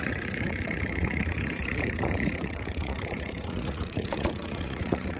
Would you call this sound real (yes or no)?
no